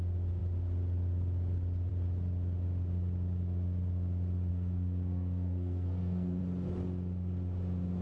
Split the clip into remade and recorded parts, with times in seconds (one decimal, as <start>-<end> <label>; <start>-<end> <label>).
0.0-4.5 recorded; 4.5-6.4 remade; 6.4-8.0 recorded